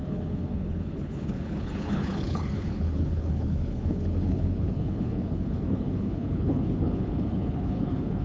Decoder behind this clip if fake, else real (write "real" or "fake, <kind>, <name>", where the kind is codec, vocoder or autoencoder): fake, codec, HILCodec